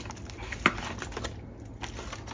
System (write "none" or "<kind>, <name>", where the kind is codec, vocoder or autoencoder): none